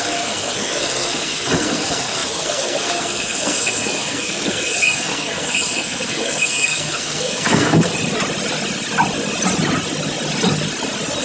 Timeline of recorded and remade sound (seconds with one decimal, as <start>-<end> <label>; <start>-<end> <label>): 0.0-7.9 remade; 7.9-11.2 recorded